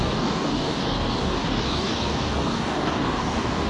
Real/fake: fake